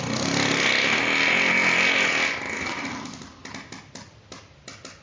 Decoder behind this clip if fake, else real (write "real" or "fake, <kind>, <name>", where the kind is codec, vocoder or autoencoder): real